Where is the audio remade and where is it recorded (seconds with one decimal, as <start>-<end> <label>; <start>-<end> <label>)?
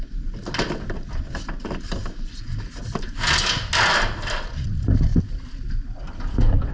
0.0-6.7 recorded